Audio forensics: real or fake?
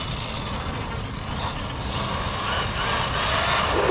real